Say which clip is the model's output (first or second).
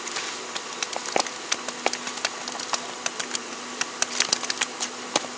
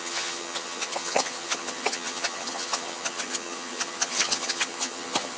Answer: second